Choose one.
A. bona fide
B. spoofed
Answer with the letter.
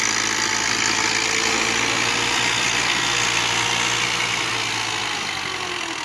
A